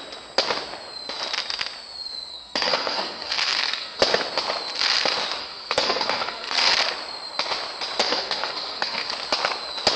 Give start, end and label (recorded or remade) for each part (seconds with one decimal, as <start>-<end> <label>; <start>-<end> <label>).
0.0-2.3 recorded; 2.3-4.0 remade; 4.0-5.4 recorded; 5.4-6.7 remade; 6.7-8.0 recorded; 8.0-9.1 remade; 9.1-10.0 recorded